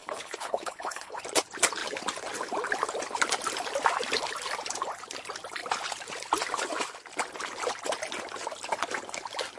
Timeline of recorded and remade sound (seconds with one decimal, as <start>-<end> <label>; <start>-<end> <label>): 0.0-1.2 remade; 1.2-9.6 recorded